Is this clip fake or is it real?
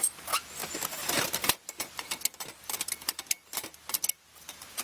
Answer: real